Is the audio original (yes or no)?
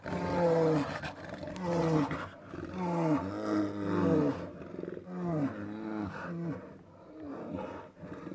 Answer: yes